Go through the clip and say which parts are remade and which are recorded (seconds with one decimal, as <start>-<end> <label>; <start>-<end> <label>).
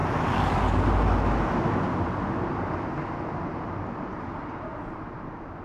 0.0-3.4 recorded; 3.4-5.6 remade